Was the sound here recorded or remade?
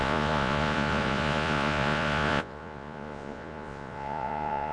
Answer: remade